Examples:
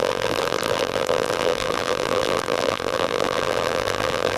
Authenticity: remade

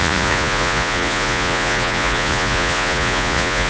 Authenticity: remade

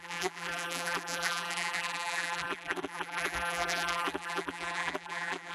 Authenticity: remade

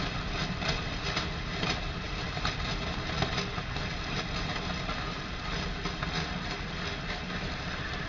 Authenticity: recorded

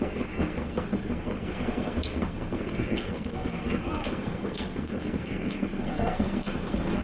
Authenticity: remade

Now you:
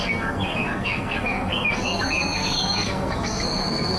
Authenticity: remade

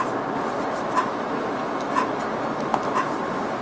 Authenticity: recorded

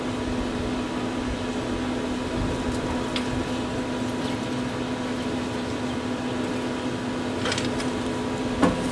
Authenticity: recorded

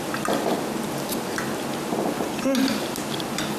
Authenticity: recorded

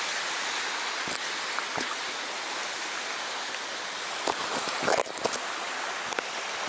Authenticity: recorded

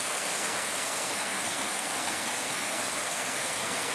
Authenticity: remade